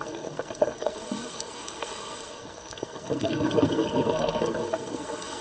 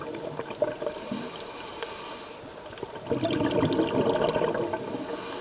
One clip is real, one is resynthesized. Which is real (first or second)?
second